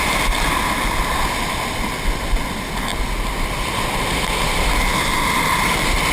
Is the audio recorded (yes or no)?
yes